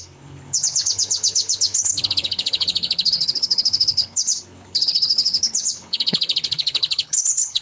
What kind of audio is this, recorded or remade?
remade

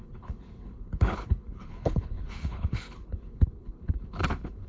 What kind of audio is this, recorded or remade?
remade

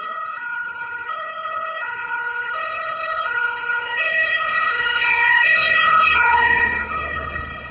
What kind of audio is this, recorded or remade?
remade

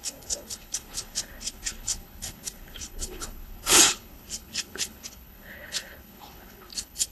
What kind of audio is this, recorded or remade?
remade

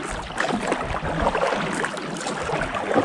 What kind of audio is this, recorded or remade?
recorded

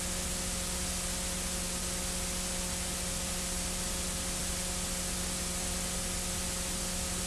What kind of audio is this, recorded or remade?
recorded